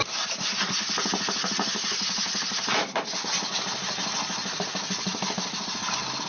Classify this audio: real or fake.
fake